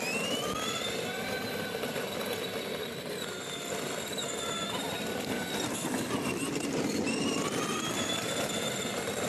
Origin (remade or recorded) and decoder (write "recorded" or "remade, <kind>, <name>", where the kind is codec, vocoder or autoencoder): recorded